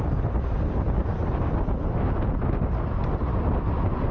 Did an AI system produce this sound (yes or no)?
no